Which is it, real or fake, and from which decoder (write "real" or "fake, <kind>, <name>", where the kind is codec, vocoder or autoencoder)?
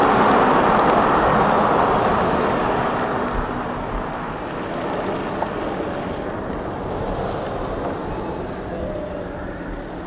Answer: real